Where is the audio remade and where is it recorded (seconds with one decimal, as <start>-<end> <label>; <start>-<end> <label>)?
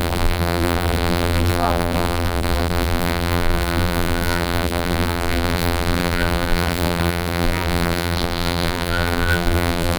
0.0-10.0 remade